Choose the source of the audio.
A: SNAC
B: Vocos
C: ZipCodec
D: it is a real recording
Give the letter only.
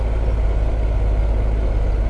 D